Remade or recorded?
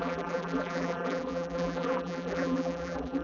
remade